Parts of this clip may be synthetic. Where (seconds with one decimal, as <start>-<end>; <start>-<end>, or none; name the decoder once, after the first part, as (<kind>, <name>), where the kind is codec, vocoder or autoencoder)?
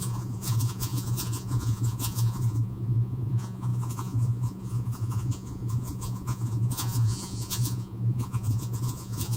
0.0-9.4 (vocoder, Vocos)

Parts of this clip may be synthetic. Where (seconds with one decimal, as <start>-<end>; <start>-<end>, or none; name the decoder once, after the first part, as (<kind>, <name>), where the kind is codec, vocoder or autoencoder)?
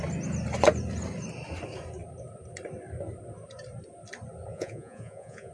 4.5-5.5 (vocoder, Vocos)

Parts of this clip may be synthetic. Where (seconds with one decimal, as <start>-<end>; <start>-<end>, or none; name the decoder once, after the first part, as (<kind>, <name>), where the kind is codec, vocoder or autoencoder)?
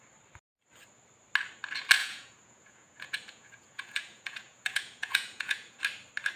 2.0-5.8 (vocoder, Vocos)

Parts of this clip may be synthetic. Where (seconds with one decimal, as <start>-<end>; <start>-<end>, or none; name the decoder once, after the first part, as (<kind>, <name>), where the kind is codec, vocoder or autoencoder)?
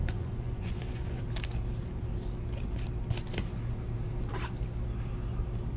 0.0-1.2 (vocoder, Vocos)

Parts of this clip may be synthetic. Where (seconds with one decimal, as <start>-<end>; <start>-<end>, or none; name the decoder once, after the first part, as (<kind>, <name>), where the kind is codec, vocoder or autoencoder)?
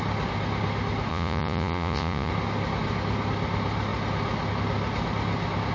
1.1-2.3 (vocoder, Vocos)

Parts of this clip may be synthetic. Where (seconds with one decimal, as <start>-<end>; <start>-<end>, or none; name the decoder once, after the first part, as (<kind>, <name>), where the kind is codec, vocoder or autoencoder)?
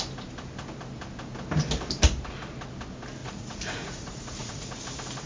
3.2-4.8 (vocoder, Vocos)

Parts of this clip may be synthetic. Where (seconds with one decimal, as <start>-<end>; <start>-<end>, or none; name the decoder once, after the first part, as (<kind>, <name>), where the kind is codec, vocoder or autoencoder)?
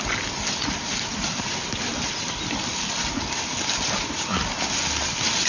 none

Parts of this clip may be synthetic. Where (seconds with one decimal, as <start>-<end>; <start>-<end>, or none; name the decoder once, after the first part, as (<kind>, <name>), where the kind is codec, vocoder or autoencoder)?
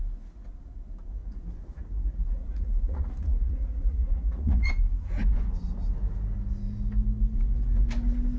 2.2-4.7 (vocoder, Vocos)